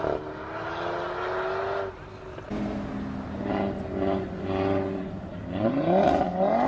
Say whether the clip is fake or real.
real